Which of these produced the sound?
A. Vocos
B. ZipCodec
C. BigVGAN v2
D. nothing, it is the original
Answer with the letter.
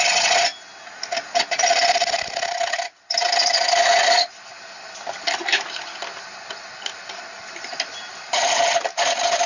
D